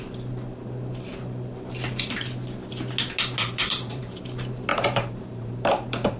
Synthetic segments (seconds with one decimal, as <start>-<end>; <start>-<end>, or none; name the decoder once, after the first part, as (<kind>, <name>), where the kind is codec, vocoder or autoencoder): 3.4-4.2 (vocoder, BigVGAN v2); 4.7-6.2